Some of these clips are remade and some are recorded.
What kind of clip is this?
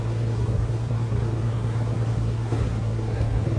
remade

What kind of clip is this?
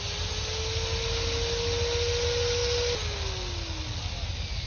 recorded